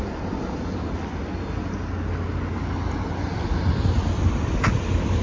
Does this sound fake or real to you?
real